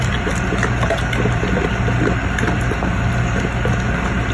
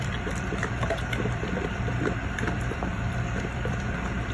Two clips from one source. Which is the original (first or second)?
first